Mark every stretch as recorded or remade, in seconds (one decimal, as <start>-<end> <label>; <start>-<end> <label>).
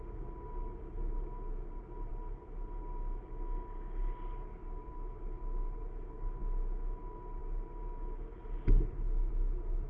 0.0-9.9 recorded